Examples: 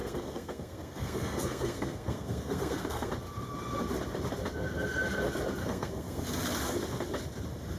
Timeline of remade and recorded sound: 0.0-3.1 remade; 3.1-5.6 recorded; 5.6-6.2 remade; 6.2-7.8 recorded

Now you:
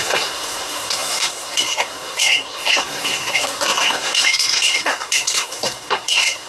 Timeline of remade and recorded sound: 0.0-6.5 remade

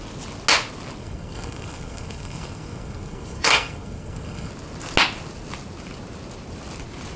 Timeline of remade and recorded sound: 0.0-1.0 recorded; 1.0-4.5 remade; 4.5-7.2 recorded

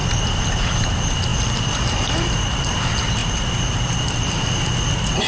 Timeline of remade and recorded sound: 0.0-0.9 remade; 0.9-1.3 recorded; 1.3-2.6 remade; 2.6-3.2 recorded; 3.2-4.4 remade; 4.4-5.3 recorded

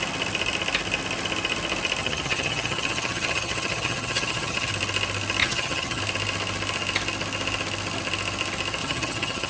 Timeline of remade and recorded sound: 0.0-2.0 recorded; 2.0-4.7 remade; 4.7-5.4 recorded; 5.4-6.0 remade; 6.0-8.8 recorded; 8.8-9.5 remade

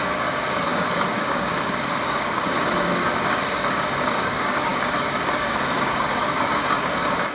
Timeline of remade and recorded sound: 0.0-7.3 remade

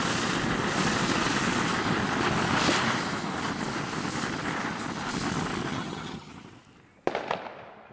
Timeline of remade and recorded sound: 0.0-5.7 recorded; 5.7-6.3 remade; 6.3-7.9 recorded